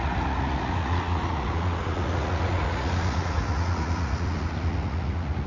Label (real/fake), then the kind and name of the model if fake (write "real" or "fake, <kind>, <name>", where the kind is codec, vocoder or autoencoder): fake, vocoder, Vocos